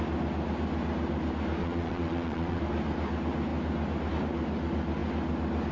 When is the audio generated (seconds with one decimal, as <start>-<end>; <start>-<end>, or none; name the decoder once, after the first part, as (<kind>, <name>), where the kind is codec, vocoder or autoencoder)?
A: 1.6-2.6 (vocoder, Vocos)